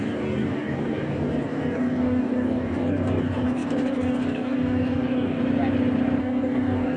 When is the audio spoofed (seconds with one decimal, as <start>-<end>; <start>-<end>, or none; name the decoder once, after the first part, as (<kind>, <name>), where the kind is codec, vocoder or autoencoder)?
0.0-5.4 (codec, DAC); 6.2-7.0